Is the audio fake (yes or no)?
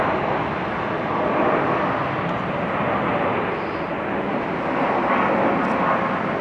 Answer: no